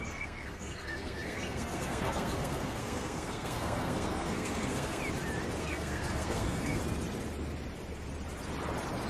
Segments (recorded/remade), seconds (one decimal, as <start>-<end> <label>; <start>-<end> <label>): 0.0-5.0 remade; 5.0-5.6 recorded; 5.6-6.8 remade; 6.8-9.1 recorded